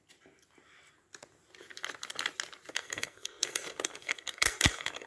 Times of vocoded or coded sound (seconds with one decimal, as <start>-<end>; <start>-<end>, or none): 2.7-5.1